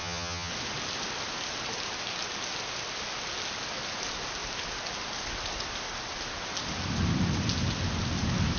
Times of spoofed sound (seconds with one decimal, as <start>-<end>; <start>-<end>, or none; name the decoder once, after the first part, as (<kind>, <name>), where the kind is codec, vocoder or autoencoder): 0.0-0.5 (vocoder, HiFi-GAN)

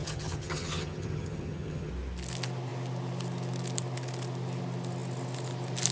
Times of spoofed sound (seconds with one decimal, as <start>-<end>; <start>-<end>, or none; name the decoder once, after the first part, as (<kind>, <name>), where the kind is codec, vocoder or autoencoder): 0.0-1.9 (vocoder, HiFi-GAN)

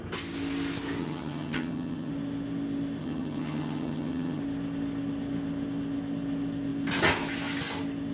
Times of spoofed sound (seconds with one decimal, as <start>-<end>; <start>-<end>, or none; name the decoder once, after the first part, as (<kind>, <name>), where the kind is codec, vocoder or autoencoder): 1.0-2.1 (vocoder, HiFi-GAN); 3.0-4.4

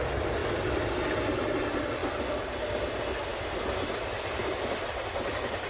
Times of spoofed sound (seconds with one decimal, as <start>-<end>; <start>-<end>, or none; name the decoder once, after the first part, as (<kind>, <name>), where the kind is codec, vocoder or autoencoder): none

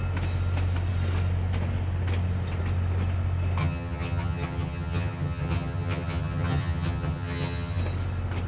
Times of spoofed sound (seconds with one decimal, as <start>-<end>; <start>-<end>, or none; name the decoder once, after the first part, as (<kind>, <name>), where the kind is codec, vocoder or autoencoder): 3.6-7.8 (vocoder, HiFi-GAN)

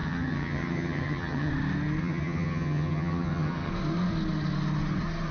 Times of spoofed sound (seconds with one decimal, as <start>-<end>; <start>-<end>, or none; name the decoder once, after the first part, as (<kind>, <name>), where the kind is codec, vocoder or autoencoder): 0.0-1.5 (vocoder, HiFi-GAN); 2.0-3.7

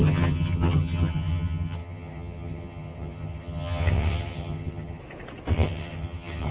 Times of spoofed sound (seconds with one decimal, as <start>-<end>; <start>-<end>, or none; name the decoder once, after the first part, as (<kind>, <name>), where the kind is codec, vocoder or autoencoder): 0.0-5.0 (vocoder, HiFi-GAN); 5.5-6.5

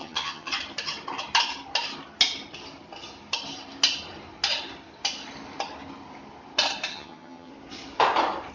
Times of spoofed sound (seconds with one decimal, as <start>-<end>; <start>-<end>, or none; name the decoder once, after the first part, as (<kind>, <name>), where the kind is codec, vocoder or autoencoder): 0.0-0.5 (vocoder, HiFi-GAN); 6.9-7.5